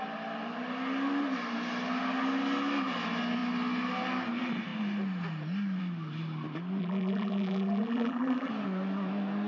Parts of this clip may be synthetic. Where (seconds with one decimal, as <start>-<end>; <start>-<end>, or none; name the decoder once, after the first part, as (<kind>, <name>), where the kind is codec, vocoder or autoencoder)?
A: 6.8-8.5 (vocoder, BigVGAN v2)